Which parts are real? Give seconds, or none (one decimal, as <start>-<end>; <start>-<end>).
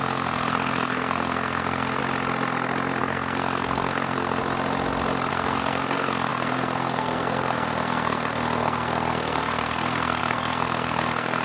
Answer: 2.0-3.0; 4.4-5.3